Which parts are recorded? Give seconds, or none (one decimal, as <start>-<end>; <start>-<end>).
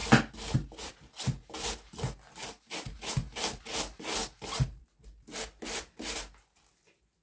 0.0-7.2